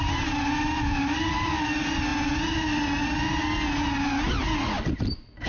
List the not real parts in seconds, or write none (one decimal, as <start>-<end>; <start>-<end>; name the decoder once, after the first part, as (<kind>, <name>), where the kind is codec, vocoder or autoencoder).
none